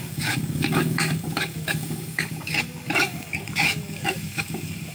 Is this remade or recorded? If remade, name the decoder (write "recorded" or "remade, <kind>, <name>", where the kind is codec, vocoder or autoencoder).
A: remade, codec, DAC